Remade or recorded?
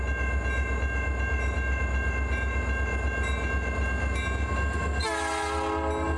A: recorded